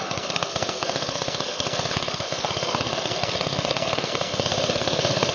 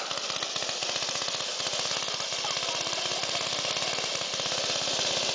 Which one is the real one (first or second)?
second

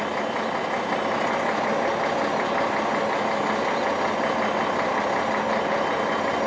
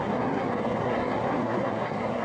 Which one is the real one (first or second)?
first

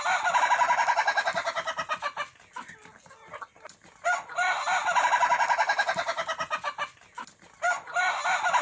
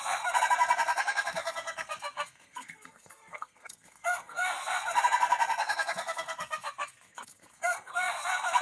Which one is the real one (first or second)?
first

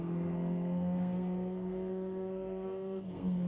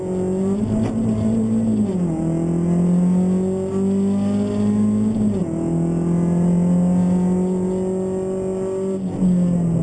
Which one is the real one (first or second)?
second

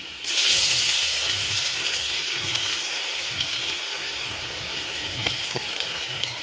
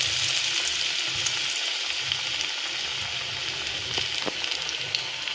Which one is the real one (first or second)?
second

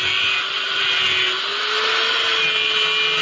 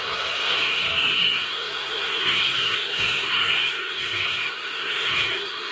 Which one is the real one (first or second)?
first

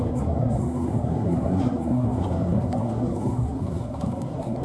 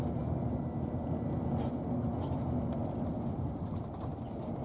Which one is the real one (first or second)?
second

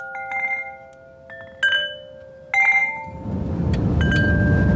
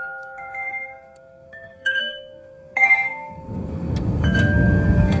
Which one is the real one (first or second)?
first